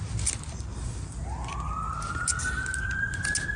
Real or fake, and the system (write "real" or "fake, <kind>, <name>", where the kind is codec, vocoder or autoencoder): real